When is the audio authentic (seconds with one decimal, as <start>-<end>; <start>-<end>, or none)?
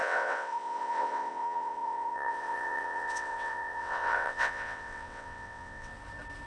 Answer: 5.9-6.5